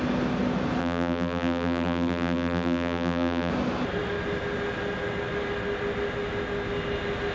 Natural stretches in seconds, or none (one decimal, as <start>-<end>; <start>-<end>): 0.0-0.8; 3.5-7.3